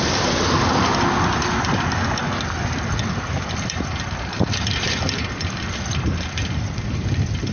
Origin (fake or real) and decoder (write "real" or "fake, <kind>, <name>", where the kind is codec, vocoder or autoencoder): real